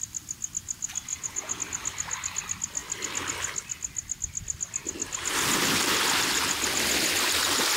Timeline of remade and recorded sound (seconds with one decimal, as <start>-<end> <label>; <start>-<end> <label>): 0.0-1.1 recorded; 1.1-1.6 remade; 1.6-7.8 recorded